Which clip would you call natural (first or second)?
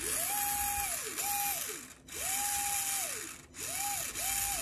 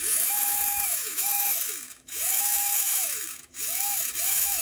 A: first